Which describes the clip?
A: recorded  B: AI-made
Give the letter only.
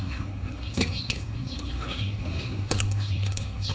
B